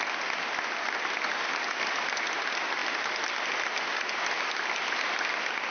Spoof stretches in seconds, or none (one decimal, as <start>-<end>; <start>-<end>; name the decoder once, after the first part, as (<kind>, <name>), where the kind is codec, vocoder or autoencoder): none